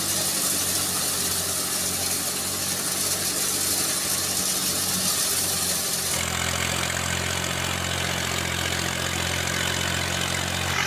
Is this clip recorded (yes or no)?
yes